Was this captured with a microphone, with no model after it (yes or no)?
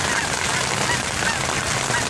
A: yes